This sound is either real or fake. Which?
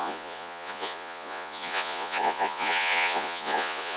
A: fake